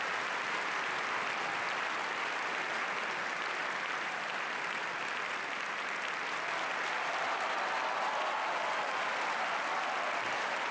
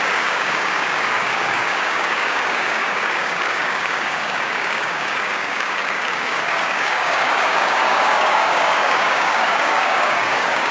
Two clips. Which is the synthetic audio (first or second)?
second